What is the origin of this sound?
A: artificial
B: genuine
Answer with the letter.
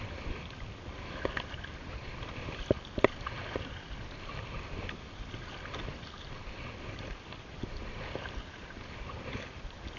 A